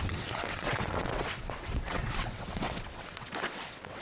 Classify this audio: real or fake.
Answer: fake